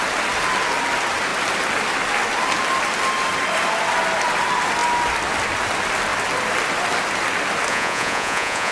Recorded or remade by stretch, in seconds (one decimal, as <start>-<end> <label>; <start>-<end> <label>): 0.0-7.7 recorded; 7.7-8.7 remade